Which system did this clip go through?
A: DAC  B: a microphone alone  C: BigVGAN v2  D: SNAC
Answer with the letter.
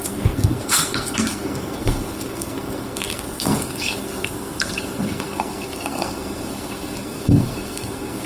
D